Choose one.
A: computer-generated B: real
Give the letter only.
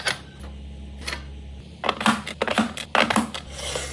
B